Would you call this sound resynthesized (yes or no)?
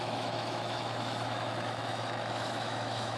yes